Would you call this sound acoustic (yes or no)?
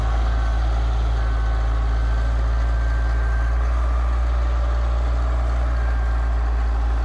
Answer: yes